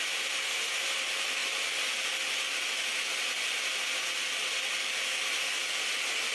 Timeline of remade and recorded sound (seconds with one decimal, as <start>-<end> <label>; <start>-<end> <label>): 0.0-6.3 recorded